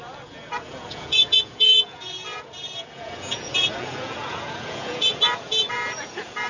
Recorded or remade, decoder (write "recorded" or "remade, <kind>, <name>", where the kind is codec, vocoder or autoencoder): remade, vocoder, Vocos